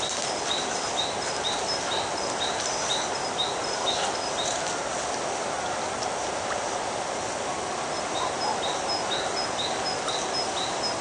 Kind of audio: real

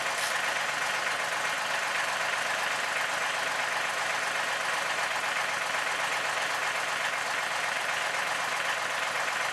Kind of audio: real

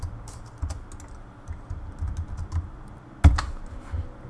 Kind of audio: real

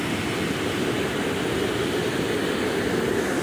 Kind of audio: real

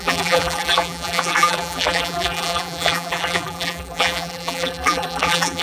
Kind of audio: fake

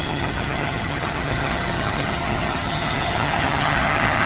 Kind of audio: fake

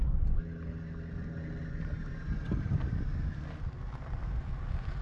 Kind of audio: real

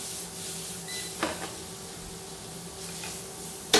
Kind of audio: real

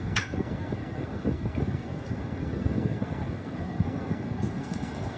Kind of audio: fake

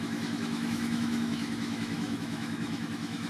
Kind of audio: fake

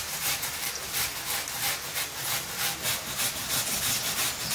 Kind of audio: real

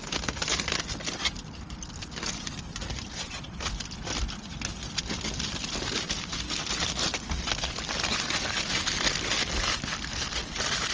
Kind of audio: real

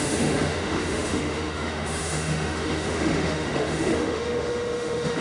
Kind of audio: fake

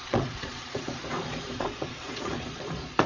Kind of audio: fake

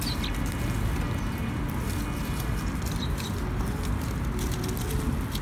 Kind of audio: real